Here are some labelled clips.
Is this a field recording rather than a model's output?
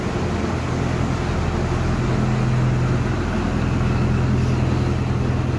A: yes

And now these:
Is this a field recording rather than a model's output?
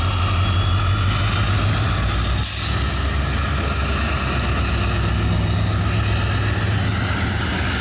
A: yes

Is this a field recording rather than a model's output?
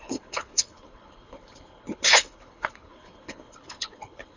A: no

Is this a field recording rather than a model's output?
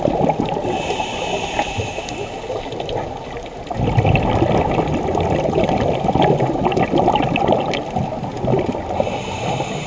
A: yes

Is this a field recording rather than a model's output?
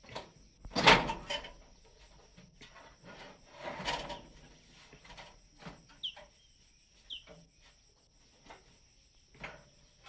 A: yes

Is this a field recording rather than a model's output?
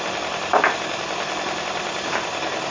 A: yes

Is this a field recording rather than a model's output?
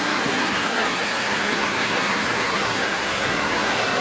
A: no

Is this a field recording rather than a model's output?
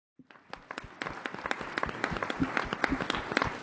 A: yes